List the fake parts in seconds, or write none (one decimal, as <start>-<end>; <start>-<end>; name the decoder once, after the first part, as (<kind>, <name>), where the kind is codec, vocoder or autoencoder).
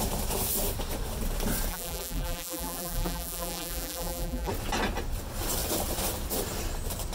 1.7-4.5 (vocoder, BigVGAN v2)